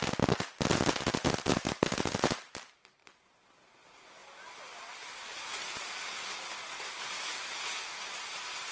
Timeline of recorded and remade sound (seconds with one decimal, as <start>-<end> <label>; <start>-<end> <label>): 0.0-1.6 recorded; 1.6-2.1 remade; 2.1-8.7 recorded